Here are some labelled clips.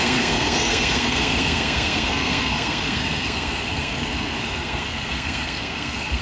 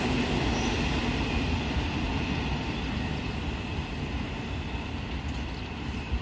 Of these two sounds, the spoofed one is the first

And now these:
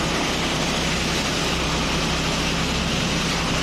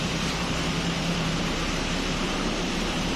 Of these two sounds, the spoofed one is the second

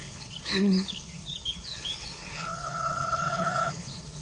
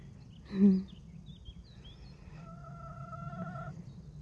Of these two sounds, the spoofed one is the first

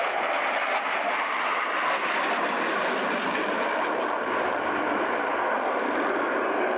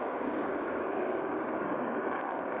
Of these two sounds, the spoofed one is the second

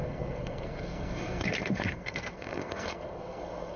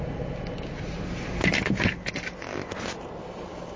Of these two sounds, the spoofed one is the first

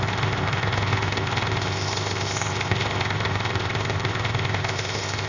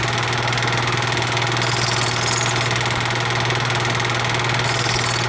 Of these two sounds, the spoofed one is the first